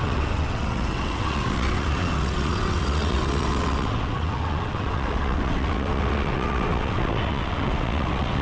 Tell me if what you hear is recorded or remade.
remade